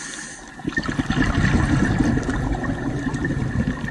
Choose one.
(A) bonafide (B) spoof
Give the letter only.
A